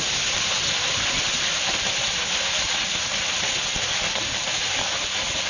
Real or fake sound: real